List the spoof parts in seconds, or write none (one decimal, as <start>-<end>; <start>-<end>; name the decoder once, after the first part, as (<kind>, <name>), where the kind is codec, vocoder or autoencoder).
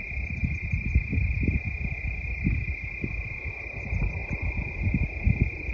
none